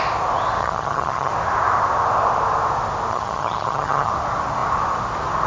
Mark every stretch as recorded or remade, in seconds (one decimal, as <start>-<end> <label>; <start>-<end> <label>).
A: 0.0-0.6 recorded; 0.6-1.3 remade; 1.3-3.1 recorded; 3.1-4.1 remade; 4.1-5.5 recorded